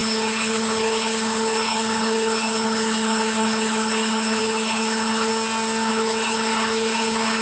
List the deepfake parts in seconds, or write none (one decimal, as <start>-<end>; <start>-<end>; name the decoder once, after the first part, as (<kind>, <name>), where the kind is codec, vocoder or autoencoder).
0.0-5.3 (codec, HILCodec); 5.9-7.4

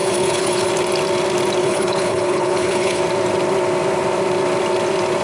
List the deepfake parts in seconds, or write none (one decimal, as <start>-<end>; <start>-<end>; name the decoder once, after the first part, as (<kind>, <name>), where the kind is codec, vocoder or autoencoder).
0.0-0.7 (codec, HILCodec); 1.6-3.0

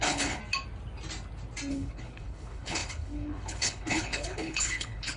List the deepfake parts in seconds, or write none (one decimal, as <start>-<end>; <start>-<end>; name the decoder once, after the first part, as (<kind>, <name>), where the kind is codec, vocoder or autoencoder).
0.0-0.4 (codec, HILCodec); 1.7-5.2

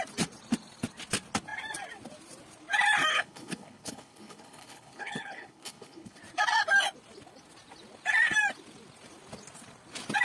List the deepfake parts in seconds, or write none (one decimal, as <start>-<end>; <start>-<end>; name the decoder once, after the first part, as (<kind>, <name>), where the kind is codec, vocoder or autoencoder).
3.1-6.2 (codec, HILCodec)